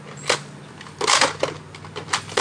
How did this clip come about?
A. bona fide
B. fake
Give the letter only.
A